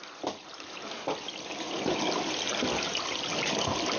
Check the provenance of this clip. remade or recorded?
recorded